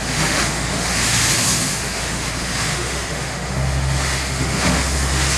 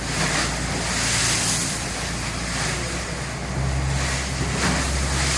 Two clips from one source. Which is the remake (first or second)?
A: first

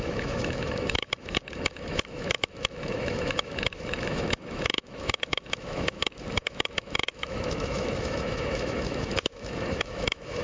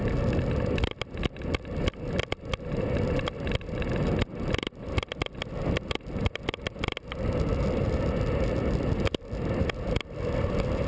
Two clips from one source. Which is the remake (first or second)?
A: first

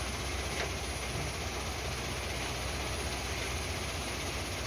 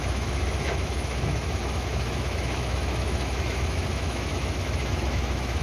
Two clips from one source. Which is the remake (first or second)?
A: second